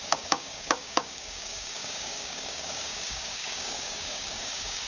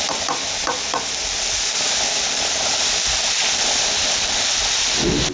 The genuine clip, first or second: second